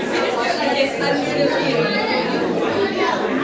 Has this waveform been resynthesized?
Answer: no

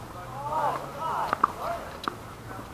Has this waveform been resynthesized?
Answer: no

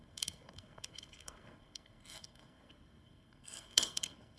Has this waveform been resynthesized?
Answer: yes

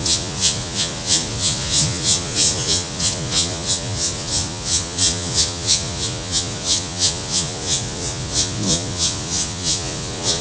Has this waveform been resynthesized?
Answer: yes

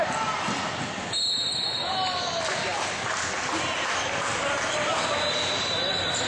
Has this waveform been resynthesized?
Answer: no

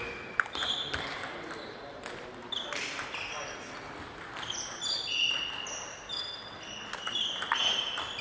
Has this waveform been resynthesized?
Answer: no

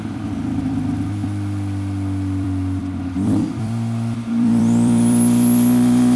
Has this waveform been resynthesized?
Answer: yes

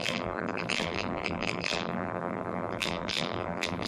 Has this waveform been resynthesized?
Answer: yes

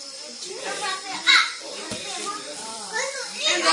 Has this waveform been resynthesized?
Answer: yes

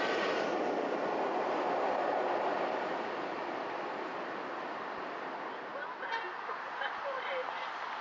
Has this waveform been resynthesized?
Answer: no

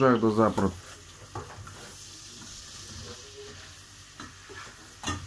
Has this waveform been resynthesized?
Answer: no